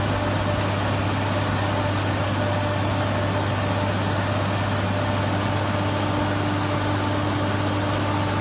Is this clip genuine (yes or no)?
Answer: yes